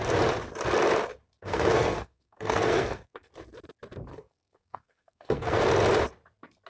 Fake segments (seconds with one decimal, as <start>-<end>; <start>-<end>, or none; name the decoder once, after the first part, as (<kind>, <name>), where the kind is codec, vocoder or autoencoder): 1.4-3.3 (codec, SNAC); 4.1-5.6